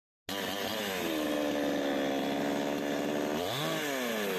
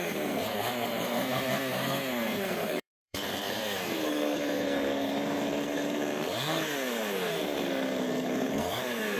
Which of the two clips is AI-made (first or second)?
second